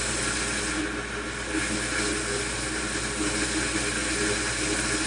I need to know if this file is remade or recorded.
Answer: recorded